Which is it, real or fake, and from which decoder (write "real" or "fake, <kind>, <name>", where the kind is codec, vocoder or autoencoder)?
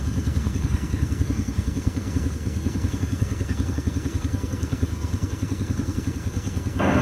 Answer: fake, codec, SNAC